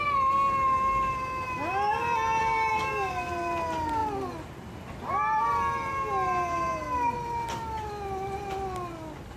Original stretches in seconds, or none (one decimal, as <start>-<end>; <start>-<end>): 0.0-2.4; 3.1-9.4